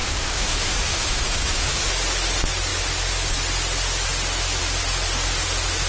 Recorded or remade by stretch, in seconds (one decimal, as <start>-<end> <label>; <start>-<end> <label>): 0.0-1.9 remade; 1.9-5.9 recorded